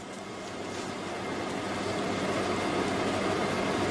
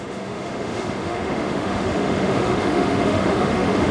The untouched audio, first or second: first